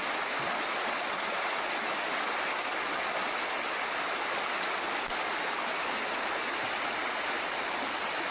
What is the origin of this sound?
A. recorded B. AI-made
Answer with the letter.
A